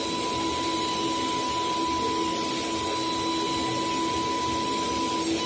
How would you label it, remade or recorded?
recorded